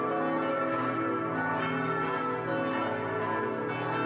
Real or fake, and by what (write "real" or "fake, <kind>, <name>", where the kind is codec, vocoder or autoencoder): real